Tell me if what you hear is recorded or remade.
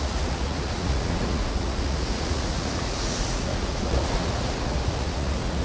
remade